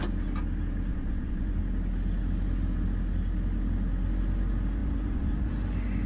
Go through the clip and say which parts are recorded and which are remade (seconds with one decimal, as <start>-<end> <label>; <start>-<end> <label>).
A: 0.0-0.9 recorded; 0.9-1.5 remade; 1.5-4.8 recorded; 4.8-5.5 remade; 5.5-6.1 recorded